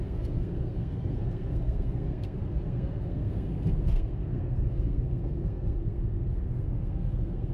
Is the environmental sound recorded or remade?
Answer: remade